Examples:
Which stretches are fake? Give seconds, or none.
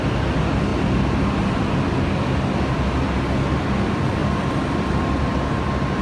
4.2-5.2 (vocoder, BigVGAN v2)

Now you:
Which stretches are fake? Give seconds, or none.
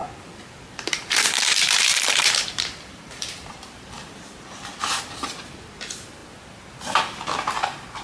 0.0-4.8 (vocoder, BigVGAN v2)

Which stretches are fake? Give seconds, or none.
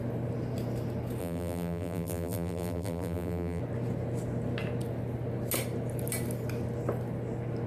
1.2-3.6 (vocoder, BigVGAN v2)